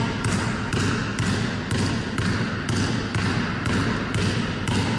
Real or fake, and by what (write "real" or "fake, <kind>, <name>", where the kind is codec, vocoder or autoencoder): real